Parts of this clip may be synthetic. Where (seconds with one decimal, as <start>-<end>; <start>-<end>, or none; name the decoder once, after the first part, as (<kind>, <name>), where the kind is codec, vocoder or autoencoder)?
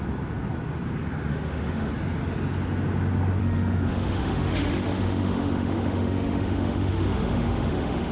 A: 1.3-1.9 (autoencoder, DAC-VAE); 3.4-8.1